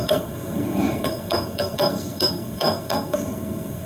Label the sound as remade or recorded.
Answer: remade